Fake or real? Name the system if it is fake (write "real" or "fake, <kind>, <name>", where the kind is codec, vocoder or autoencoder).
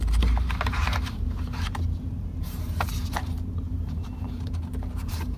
fake, vocoder, BigVGAN v2